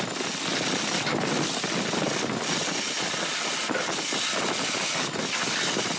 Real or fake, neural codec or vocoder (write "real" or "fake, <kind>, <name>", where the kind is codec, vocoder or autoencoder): real